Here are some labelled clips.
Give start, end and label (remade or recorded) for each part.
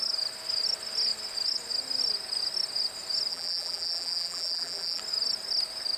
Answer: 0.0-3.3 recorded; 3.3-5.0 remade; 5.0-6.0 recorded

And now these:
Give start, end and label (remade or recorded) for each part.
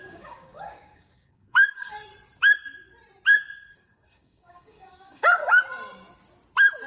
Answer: 0.0-2.1 remade; 2.1-3.7 recorded; 3.7-5.4 remade; 5.4-6.9 recorded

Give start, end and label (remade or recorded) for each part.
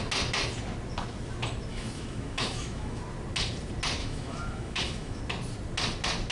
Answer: 0.0-1.7 recorded; 1.7-3.0 remade; 3.0-4.0 recorded; 4.0-5.2 remade; 5.2-6.3 recorded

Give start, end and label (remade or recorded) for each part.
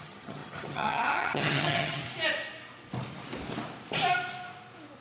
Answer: 0.0-2.0 remade; 2.0-5.0 recorded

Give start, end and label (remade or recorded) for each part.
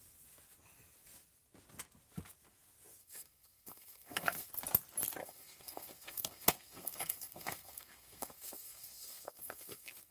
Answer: 0.0-3.0 recorded; 3.0-4.5 remade; 4.5-5.2 recorded; 5.2-10.1 remade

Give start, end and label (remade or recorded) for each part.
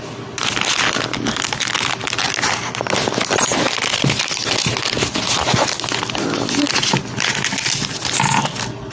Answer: 0.0-8.9 recorded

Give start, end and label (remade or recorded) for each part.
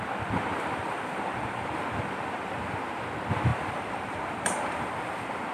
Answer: 0.0-0.5 recorded; 0.5-1.8 remade; 1.8-3.5 recorded; 3.5-5.0 remade; 5.0-5.5 recorded